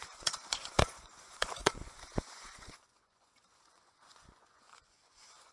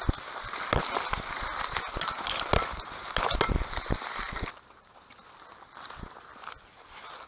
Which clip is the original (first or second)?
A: second